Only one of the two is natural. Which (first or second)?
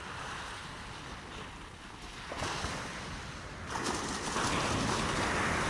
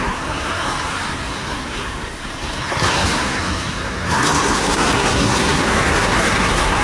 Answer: first